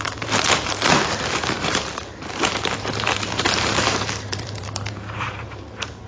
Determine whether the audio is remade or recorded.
remade